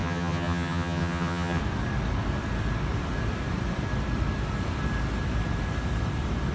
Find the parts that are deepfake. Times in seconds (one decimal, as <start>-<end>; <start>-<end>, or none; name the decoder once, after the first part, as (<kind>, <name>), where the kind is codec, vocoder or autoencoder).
0.0-1.6 (vocoder, HiFi-GAN)